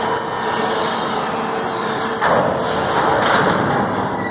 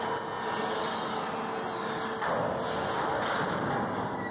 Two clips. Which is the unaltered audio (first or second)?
second